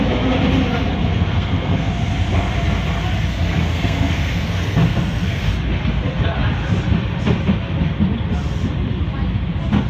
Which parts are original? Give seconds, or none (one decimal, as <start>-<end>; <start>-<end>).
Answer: 0.0-1.1; 1.9-3.3; 5.5-9.9